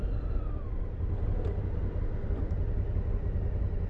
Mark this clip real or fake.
real